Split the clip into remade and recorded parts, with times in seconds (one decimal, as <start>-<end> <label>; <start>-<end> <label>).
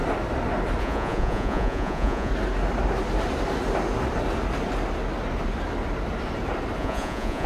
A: 0.0-0.8 recorded; 0.8-2.3 remade; 2.3-6.8 recorded; 6.8-7.5 remade